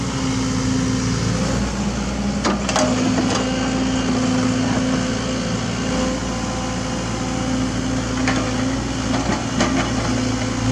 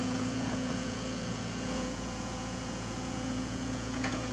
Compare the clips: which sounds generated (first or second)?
second